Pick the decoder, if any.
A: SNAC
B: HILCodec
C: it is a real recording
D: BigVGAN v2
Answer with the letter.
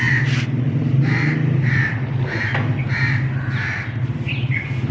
C